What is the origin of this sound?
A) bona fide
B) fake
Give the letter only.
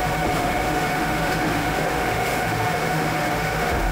B